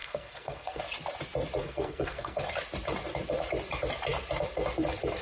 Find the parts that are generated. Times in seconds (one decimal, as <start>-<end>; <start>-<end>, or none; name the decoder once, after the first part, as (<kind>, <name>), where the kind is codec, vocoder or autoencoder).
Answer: 0.0-0.8 (codec, SNAC); 1.6-2.4